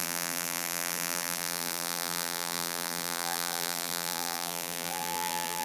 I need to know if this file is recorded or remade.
remade